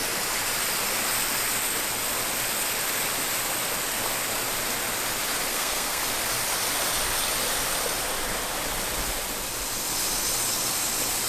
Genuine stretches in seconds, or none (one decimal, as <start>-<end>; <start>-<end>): 0.0-5.5; 6.0-11.3